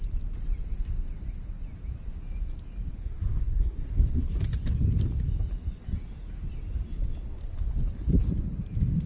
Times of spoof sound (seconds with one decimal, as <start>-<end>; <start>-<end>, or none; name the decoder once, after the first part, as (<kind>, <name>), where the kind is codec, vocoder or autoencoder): 3.0-4.4 (codec, SNAC)